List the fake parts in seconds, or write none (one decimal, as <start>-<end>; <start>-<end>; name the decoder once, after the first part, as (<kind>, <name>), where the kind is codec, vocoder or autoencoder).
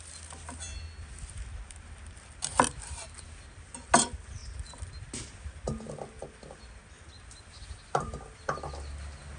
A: none